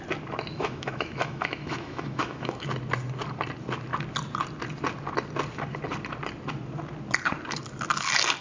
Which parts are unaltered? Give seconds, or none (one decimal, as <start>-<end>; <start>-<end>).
0.0-0.5; 2.7-8.4